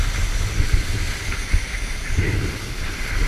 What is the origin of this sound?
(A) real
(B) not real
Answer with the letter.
A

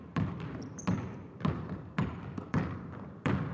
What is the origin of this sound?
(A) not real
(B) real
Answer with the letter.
A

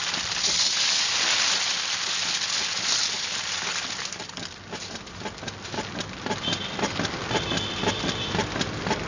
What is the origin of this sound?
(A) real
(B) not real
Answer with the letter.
A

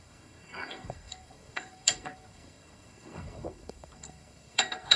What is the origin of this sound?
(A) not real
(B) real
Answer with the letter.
A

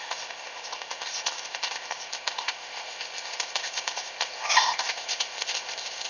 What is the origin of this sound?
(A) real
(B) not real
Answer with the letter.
B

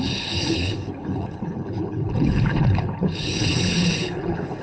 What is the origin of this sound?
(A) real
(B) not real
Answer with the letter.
B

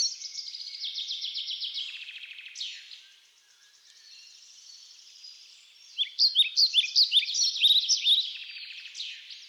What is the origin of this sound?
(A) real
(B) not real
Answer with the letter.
A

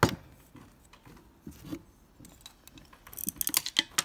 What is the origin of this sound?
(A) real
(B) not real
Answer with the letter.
A